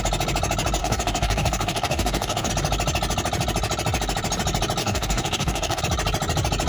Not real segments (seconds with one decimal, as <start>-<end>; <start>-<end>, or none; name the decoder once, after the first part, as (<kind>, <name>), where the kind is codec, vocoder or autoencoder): 0.8-2.5 (codec, DAC); 4.8-5.8